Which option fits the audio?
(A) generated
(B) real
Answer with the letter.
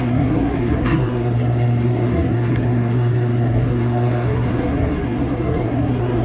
A